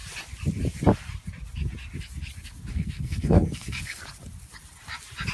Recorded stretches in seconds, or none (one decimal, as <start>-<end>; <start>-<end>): 0.0-2.7; 4.0-5.3

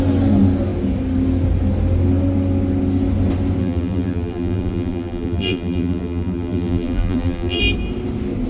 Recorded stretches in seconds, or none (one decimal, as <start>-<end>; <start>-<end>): 0.0-3.6; 7.6-8.5

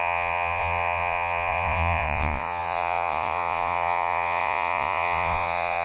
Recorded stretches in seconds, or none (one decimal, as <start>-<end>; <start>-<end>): none

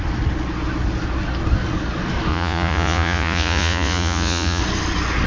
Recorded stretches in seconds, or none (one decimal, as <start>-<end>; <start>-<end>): 0.0-2.3; 4.6-5.3

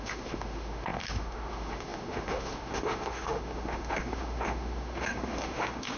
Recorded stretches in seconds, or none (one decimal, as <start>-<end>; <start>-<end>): none